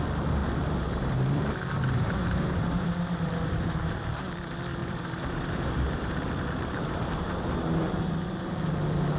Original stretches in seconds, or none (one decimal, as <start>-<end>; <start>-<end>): 0.0-0.4; 4.2-4.8; 7.5-9.2